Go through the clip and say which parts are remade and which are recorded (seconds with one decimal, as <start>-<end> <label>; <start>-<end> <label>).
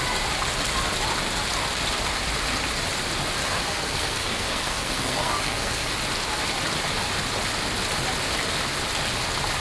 0.0-3.4 recorded; 3.4-5.9 remade; 5.9-9.6 recorded